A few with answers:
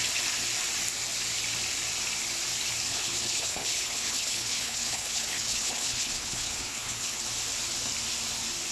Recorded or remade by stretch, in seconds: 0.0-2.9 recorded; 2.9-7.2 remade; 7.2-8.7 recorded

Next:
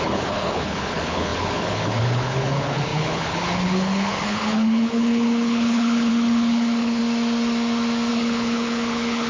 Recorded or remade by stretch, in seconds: 0.0-7.0 remade; 7.0-8.1 recorded; 8.1-9.3 remade

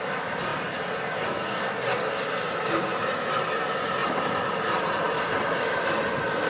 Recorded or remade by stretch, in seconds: 0.0-4.0 recorded; 4.0-4.8 remade; 4.8-6.5 recorded

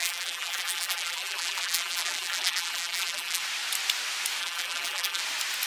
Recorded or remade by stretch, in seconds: 0.0-3.4 remade; 3.4-4.4 recorded; 4.4-5.2 remade; 5.2-5.7 recorded

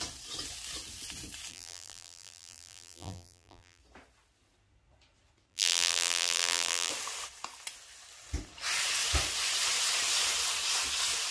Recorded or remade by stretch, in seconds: 0.0-1.5 recorded; 1.5-3.8 remade; 3.8-5.5 recorded; 5.5-6.9 remade; 6.9-11.3 recorded

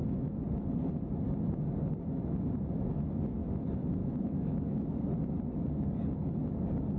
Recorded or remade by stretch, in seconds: 0.0-4.0 recorded; 4.0-5.0 remade; 5.0-7.0 recorded